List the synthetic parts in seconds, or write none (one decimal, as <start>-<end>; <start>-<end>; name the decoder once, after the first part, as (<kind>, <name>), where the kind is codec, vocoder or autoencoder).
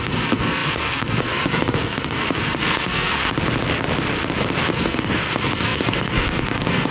0.0-3.2 (codec, SNAC); 4.7-6.9